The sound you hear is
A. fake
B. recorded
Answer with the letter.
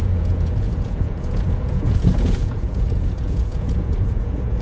A